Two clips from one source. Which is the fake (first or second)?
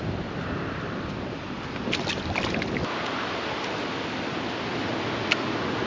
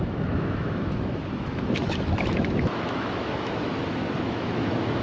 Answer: second